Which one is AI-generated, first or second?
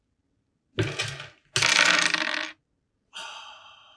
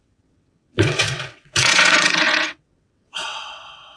second